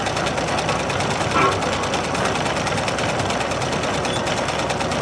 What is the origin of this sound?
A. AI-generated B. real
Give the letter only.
B